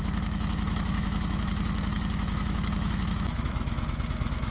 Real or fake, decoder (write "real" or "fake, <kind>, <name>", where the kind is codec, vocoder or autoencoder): fake, autoencoder, DAC-VAE